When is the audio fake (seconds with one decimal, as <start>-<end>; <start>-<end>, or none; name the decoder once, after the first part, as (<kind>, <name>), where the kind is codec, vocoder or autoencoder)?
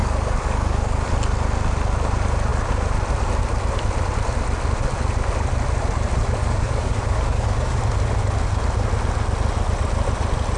0.0-1.1 (codec, DAC); 6.4-7.8